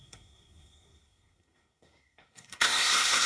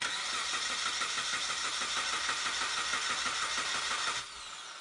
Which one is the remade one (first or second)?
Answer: first